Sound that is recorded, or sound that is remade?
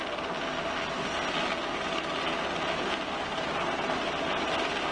recorded